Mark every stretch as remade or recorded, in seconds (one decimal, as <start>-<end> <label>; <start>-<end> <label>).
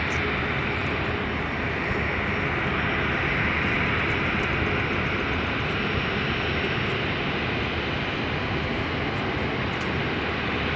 0.0-10.8 recorded